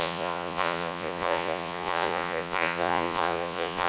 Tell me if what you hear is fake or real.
fake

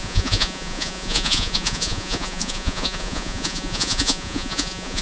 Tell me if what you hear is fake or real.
fake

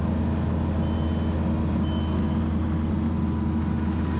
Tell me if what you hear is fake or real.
real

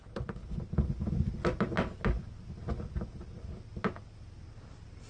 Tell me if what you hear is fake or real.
real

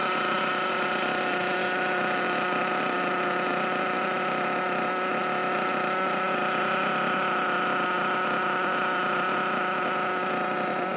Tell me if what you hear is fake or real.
real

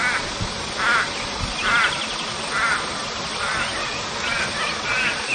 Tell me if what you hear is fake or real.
real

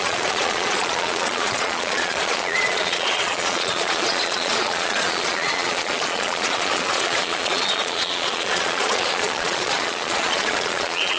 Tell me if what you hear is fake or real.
fake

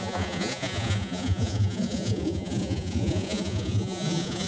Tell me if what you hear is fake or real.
fake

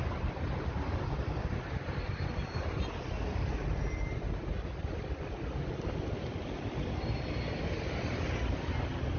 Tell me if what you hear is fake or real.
real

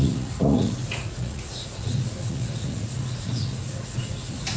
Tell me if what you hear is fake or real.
fake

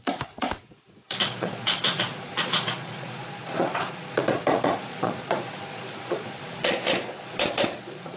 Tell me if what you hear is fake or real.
fake